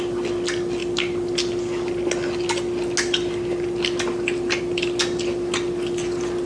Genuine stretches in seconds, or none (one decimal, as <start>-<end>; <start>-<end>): 0.0-6.5